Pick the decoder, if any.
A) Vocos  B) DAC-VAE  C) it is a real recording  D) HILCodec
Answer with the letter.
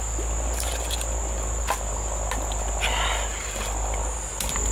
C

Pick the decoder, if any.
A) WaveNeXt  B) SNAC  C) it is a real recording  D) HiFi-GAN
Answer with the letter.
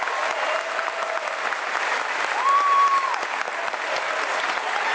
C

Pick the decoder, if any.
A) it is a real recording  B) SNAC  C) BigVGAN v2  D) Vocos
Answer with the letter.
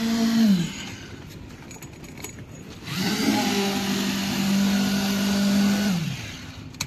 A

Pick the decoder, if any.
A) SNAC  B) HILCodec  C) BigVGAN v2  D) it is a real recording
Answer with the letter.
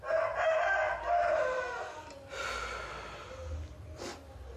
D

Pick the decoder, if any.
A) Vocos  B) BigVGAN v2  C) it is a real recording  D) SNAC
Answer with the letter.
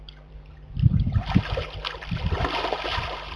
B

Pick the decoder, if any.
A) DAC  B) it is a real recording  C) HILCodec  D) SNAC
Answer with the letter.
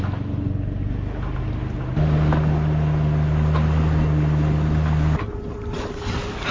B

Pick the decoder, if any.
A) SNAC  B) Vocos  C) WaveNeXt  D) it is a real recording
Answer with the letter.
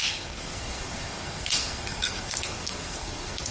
A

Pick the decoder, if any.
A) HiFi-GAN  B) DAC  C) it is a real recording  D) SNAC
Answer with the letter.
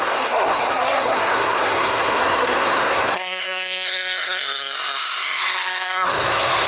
D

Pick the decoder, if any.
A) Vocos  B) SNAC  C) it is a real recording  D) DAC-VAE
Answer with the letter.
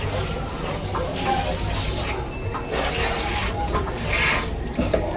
C